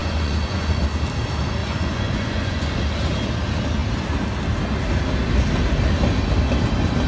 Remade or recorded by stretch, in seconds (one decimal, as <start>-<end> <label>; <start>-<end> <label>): 0.0-0.8 remade; 0.8-1.6 recorded; 1.6-2.8 remade; 2.8-7.1 recorded